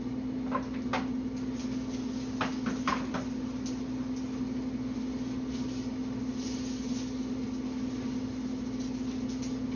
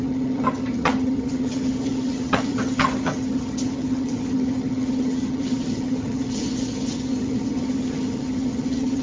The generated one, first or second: second